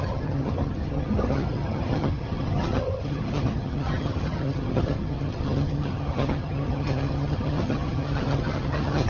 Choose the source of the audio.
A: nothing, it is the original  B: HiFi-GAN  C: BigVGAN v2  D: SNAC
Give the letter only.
B